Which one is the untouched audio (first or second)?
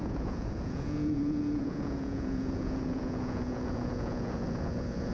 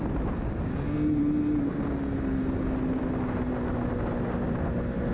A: second